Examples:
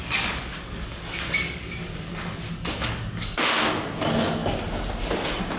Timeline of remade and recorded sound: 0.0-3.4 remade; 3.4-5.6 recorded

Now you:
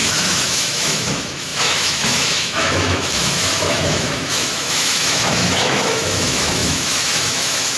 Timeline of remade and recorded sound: 0.0-7.8 remade

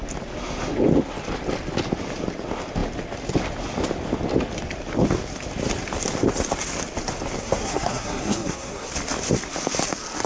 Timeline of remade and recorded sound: 0.0-7.4 recorded; 7.4-8.9 remade; 8.9-10.3 recorded